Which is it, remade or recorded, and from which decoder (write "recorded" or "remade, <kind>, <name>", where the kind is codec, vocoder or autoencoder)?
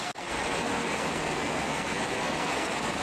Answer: remade, codec, SNAC